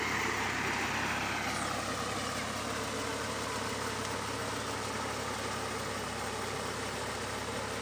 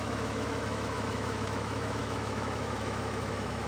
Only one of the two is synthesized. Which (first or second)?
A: second